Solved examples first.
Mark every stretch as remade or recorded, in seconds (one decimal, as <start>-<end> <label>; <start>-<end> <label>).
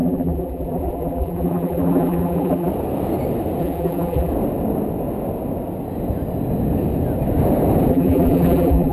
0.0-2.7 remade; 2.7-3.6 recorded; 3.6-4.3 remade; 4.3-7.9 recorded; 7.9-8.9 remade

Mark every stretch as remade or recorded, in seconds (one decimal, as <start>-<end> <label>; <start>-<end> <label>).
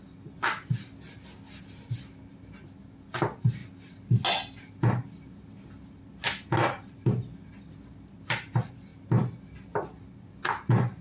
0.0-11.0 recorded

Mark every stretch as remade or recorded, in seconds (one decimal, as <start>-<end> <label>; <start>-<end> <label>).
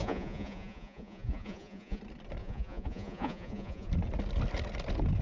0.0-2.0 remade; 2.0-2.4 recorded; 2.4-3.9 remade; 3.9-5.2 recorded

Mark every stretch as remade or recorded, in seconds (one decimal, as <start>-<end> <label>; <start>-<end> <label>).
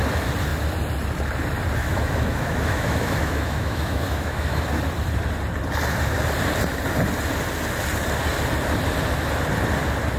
0.0-1.8 recorded; 1.8-4.6 remade; 4.6-10.2 recorded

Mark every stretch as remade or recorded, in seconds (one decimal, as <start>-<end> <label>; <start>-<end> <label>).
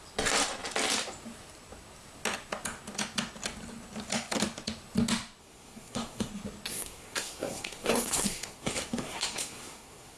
0.0-5.4 recorded; 5.4-6.3 remade; 6.3-6.7 recorded; 6.7-10.2 remade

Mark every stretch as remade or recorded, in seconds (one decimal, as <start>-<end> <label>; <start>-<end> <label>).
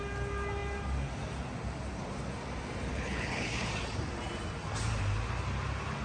0.0-2.9 recorded; 2.9-3.7 remade; 3.7-6.0 recorded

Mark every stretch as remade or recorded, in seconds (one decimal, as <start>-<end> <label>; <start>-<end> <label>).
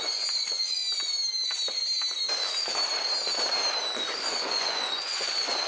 0.0-0.8 remade; 0.8-4.2 recorded; 4.2-5.7 remade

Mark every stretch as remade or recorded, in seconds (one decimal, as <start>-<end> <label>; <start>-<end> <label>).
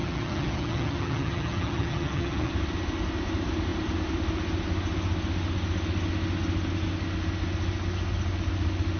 0.0-2.5 remade; 2.5-9.0 recorded